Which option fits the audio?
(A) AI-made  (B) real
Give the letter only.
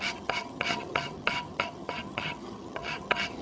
A